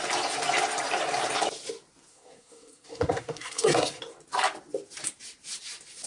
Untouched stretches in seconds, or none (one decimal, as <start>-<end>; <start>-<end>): 0.0-2.1; 4.0-6.1